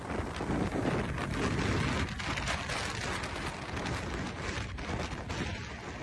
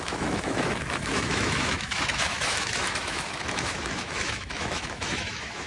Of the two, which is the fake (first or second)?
second